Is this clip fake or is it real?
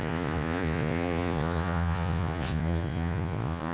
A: fake